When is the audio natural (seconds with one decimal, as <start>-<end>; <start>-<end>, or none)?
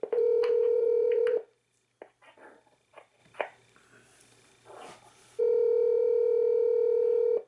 3.2-5.4